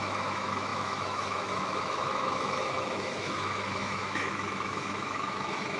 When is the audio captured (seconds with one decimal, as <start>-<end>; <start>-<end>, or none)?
none